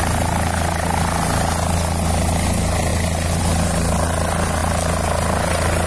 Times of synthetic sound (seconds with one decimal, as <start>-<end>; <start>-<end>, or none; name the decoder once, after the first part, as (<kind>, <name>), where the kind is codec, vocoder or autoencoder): none